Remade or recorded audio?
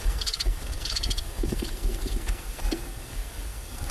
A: remade